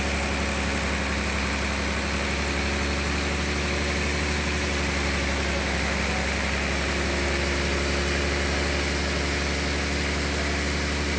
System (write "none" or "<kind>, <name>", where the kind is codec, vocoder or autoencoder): none